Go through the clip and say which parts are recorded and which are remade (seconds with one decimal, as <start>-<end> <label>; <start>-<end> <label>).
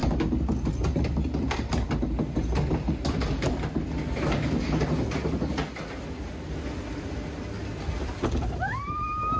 0.0-9.4 recorded